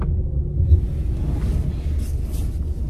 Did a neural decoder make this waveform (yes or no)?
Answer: no